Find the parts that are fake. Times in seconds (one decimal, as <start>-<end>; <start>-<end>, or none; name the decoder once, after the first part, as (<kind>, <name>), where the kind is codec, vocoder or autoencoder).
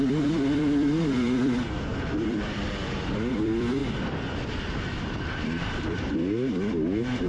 0.0-6.2 (vocoder, BigVGAN v2)